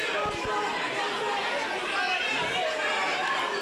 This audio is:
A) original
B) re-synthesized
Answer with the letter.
A